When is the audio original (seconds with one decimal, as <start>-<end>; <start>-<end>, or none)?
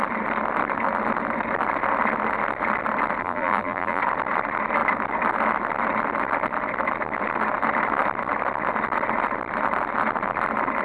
0.0-3.2; 4.0-10.8